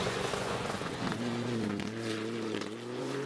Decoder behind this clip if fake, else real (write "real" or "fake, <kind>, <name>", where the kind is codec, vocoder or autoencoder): fake, vocoder, Vocos